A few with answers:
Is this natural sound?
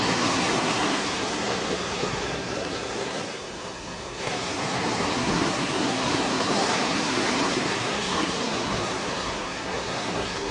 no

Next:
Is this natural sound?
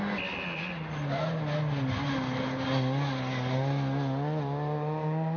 yes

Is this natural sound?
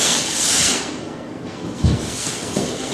no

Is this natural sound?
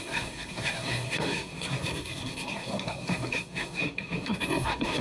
no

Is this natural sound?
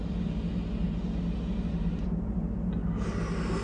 yes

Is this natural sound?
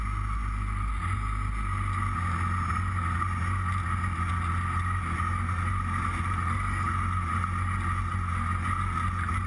yes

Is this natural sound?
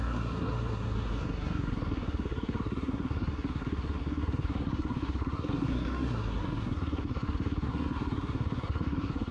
no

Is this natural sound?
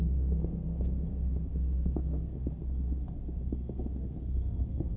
no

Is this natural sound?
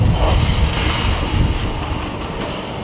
yes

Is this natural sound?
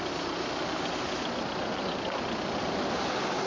yes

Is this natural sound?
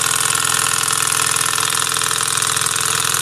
yes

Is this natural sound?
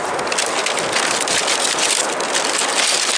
yes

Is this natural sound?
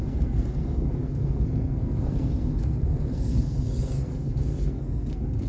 no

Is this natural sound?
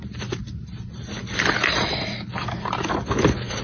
yes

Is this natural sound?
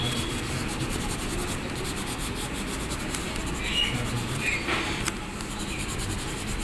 yes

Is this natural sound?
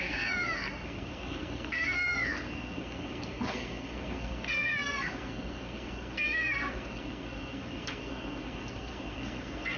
no